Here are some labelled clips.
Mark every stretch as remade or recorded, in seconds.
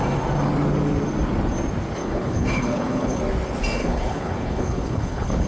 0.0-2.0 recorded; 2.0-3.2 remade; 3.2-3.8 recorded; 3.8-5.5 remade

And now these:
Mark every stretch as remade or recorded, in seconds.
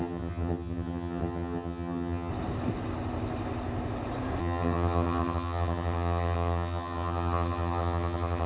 0.0-2.3 remade; 2.3-4.4 recorded; 4.4-8.5 remade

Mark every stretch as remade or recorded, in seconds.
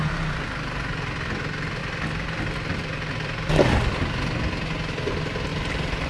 0.0-1.8 recorded; 1.8-4.0 remade; 4.0-5.5 recorded; 5.5-6.1 remade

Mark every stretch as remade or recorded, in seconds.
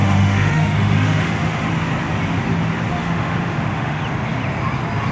0.0-1.7 remade; 1.7-3.0 recorded; 3.0-4.0 remade; 4.0-5.1 recorded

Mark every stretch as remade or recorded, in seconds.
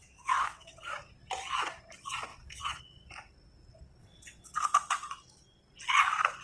0.0-1.0 remade; 1.0-2.3 recorded; 2.3-2.8 remade; 2.8-4.0 recorded; 4.0-4.6 remade; 4.6-6.4 recorded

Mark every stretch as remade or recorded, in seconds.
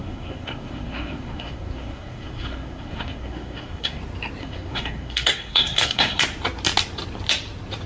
0.0-4.0 remade; 4.0-4.4 recorded; 4.4-6.2 remade; 6.2-7.9 recorded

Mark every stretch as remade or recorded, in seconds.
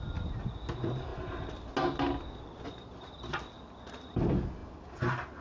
0.0-5.4 recorded